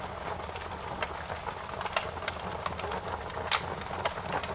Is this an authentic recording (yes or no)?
yes